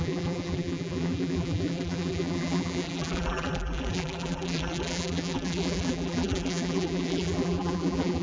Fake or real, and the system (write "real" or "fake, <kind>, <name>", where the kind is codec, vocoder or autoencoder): fake, vocoder, BigVGAN v2